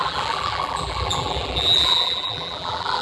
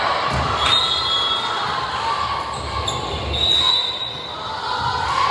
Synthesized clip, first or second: first